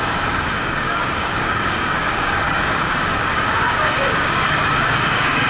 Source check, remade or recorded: remade